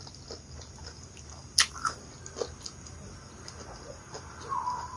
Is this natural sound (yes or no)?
yes